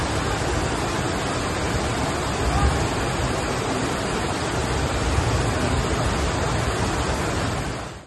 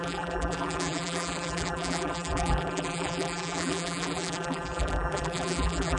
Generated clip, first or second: second